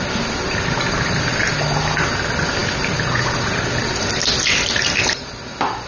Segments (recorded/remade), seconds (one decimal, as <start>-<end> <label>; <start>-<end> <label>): 0.0-5.9 recorded